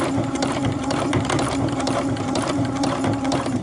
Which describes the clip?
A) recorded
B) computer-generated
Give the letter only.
B